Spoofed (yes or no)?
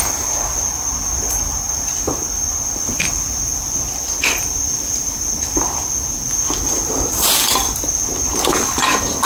no